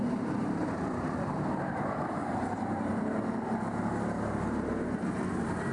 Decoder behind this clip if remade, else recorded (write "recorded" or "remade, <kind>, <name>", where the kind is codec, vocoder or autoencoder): remade, vocoder, BigVGAN v2